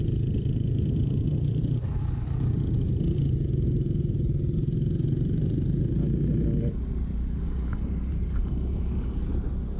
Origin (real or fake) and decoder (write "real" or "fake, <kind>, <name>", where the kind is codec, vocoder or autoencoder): fake, vocoder, BigVGAN v2